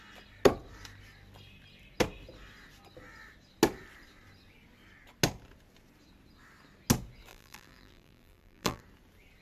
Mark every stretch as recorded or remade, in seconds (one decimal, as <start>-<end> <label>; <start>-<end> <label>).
0.0-7.3 recorded; 7.3-8.8 remade; 8.8-9.4 recorded